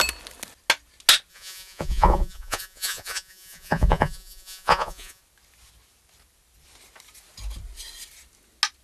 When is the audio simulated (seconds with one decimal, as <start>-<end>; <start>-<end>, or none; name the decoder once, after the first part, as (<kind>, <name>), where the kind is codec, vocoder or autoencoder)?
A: 1.3-5.2 (vocoder, Vocos)